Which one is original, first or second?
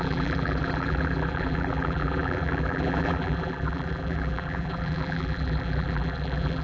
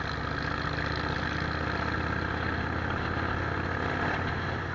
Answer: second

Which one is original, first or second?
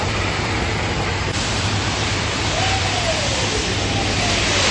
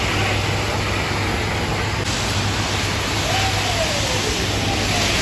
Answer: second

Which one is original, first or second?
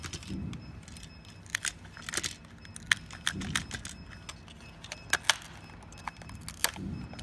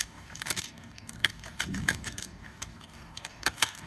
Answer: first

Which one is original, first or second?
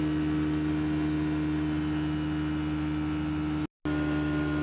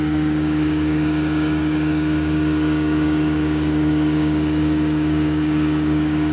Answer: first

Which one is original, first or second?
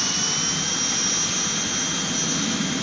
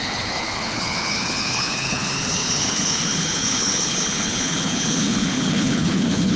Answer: first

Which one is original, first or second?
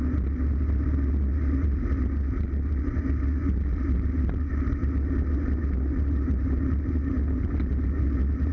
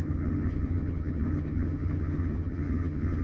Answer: first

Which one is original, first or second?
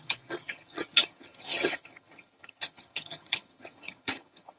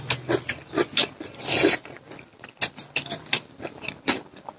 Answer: second